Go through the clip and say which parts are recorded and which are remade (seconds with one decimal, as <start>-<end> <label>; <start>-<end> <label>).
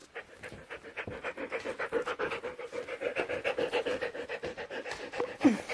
0.0-5.7 recorded